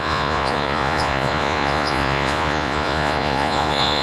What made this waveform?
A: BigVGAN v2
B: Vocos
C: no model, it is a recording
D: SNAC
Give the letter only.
B